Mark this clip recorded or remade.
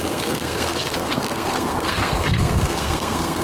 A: remade